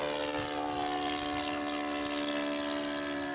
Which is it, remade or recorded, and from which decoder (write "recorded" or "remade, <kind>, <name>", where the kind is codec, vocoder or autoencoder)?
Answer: recorded